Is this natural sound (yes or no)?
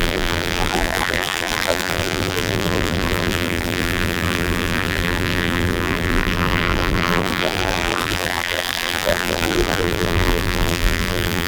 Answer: no